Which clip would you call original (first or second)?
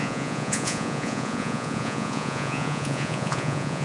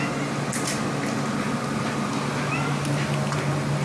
second